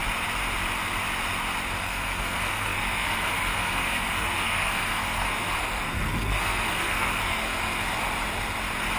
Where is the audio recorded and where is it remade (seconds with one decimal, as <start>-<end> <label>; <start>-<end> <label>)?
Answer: 0.0-1.8 recorded; 1.8-7.8 remade; 7.8-9.0 recorded

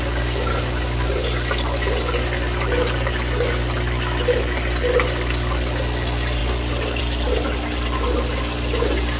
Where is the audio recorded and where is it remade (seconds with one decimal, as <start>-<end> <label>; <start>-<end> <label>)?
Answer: 0.0-9.2 recorded

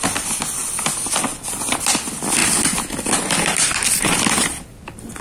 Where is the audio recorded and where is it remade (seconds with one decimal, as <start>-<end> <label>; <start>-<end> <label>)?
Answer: 0.0-5.2 recorded

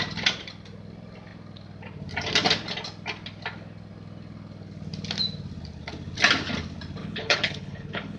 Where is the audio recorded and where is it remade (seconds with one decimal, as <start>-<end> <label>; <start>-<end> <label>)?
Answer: 0.0-7.0 recorded; 7.0-8.2 remade

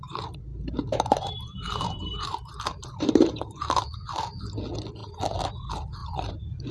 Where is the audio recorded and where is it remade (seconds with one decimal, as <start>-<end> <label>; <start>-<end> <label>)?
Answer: 0.0-0.5 recorded; 0.5-3.8 remade; 3.8-6.0 recorded; 6.0-6.7 remade

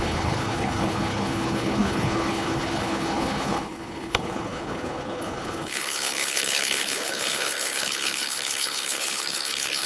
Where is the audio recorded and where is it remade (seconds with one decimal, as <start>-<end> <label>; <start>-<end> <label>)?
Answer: 0.0-9.9 remade